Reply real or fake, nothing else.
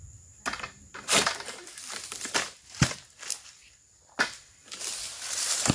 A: real